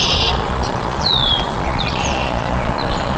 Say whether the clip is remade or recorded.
remade